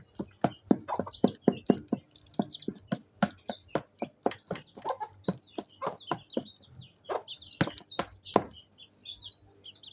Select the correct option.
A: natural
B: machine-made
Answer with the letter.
A